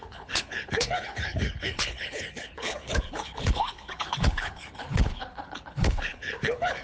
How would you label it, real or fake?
fake